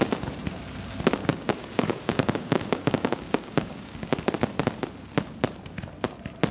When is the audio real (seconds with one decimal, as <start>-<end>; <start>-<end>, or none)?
0.0-1.2; 4.1-6.5